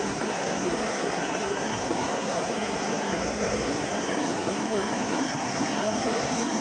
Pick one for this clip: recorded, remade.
remade